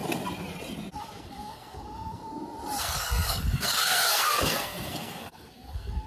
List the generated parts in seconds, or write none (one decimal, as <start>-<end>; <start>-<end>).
1.0-2.2; 2.8-6.1